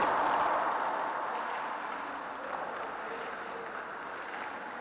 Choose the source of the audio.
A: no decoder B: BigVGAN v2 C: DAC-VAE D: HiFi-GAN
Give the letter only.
A